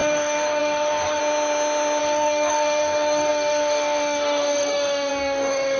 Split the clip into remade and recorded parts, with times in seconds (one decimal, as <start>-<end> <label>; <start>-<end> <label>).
0.0-1.2 remade; 1.2-2.0 recorded; 2.0-5.8 remade